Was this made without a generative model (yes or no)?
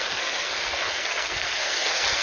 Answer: no